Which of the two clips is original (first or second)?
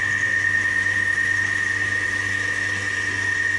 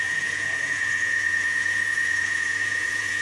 first